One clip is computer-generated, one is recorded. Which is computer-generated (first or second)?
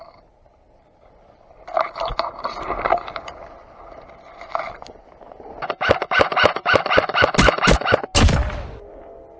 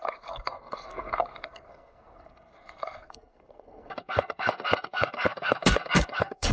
second